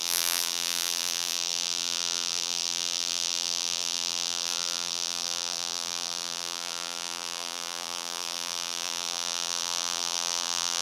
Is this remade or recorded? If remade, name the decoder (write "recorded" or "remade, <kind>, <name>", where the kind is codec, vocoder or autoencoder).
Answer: remade, vocoder, BigVGAN v2